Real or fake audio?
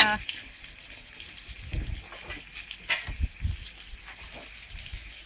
real